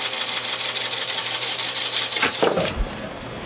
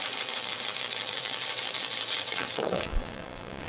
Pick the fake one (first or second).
second